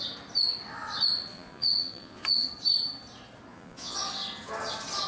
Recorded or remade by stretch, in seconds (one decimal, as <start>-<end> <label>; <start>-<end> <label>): 0.0-1.3 recorded; 1.3-2.5 remade; 2.5-3.5 recorded; 3.5-4.1 remade; 4.1-5.1 recorded